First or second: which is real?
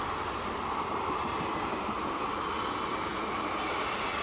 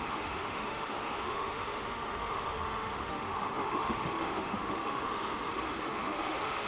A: first